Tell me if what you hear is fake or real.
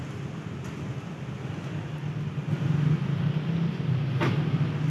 real